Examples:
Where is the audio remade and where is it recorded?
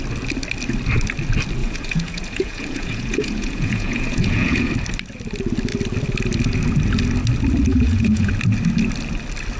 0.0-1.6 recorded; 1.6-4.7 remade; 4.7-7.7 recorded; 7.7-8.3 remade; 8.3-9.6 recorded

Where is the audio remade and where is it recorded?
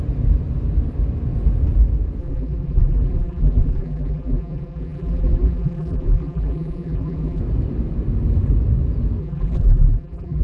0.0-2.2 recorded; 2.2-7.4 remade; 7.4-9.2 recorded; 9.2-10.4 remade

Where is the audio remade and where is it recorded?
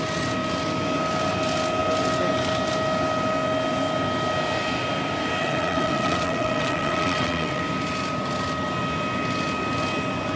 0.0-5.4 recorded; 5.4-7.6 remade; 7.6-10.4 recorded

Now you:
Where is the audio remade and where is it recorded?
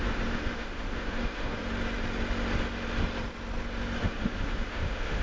0.0-1.6 remade; 1.6-4.0 recorded; 4.0-5.2 remade